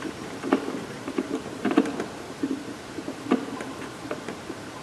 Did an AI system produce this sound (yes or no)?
yes